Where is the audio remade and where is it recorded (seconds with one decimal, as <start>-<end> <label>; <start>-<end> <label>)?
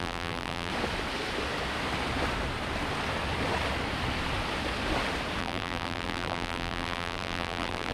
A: 0.0-0.7 remade; 0.7-5.4 recorded; 5.4-7.9 remade